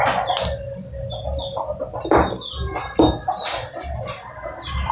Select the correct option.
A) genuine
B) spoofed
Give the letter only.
A